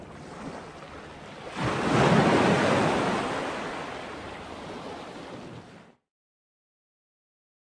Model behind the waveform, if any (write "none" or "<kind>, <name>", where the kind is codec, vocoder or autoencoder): none